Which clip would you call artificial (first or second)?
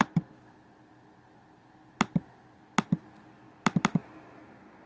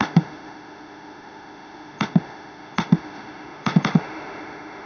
second